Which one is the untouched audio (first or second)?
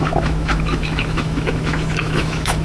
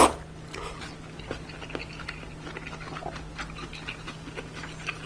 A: second